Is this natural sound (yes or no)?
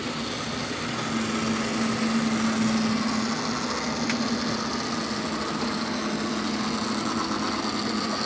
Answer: yes